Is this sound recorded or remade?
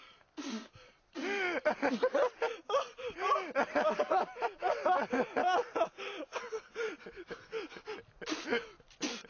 recorded